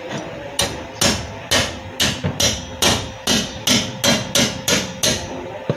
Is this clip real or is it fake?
real